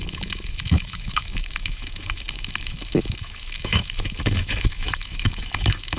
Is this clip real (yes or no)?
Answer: no